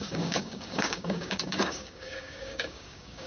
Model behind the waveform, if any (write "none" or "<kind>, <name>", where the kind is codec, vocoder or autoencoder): codec, DAC